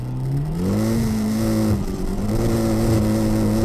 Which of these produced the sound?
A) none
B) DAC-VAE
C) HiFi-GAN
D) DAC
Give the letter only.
A